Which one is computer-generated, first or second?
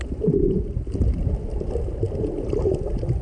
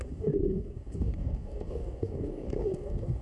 second